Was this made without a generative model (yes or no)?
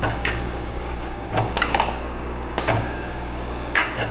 no